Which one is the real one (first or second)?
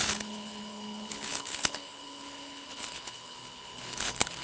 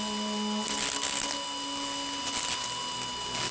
second